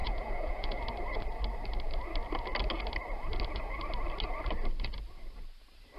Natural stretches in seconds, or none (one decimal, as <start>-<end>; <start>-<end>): 0.8-6.0